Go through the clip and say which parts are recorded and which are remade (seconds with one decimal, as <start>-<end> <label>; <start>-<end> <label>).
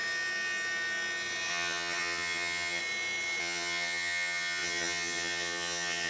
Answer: 0.0-1.5 recorded; 1.5-2.8 remade; 2.8-3.4 recorded; 3.4-6.1 remade